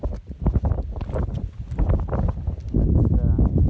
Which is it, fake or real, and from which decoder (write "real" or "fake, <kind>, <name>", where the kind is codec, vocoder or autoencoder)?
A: real